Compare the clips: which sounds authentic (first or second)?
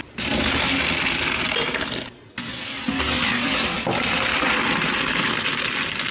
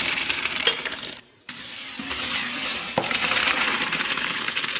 first